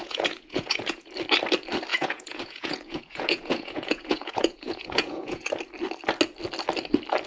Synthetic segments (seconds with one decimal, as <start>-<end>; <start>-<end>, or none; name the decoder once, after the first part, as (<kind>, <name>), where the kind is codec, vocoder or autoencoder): 0.0-1.1 (vocoder, Vocos); 1.9-5.5